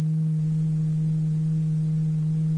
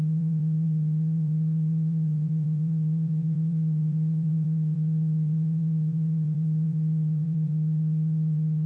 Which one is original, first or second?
first